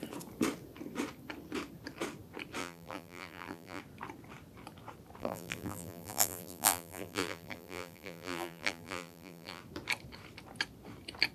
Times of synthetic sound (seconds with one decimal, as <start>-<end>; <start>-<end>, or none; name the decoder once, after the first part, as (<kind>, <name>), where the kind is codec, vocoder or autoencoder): 2.6-3.8 (vocoder, BigVGAN v2); 5.2-9.6

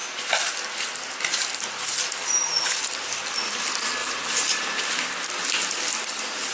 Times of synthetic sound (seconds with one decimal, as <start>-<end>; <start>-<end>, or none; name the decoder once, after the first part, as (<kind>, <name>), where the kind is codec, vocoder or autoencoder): 4.0-4.8 (vocoder, BigVGAN v2)

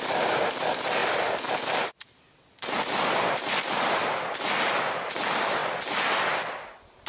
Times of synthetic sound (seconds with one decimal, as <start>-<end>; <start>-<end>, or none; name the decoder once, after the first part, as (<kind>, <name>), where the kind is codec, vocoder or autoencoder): none

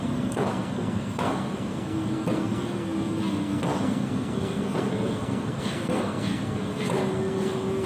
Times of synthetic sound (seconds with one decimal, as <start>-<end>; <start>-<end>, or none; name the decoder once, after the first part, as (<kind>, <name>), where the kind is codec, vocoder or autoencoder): 0.0-7.9 (codec, SNAC)

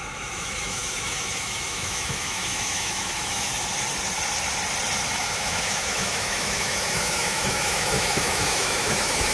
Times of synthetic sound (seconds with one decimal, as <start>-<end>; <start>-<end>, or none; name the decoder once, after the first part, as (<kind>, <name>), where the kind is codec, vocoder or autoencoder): 0.0-3.5 (autoencoder, DAC-VAE); 5.1-9.3

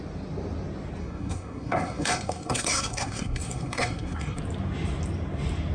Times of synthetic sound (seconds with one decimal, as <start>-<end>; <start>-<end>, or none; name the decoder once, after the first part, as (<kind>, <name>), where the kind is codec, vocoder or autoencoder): 1.0-4.4 (codec, SNAC)